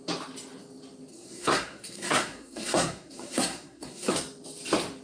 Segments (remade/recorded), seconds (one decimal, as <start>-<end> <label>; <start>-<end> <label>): 0.0-1.1 recorded; 1.1-4.1 remade; 4.1-5.0 recorded